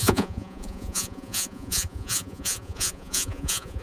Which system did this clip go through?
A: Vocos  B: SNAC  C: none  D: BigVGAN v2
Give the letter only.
A